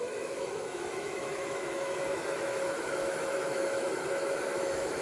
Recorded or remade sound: remade